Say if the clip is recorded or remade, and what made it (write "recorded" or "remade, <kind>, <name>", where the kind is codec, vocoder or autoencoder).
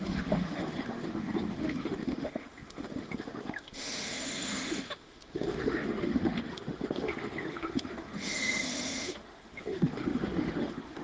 remade, autoencoder, DAC-VAE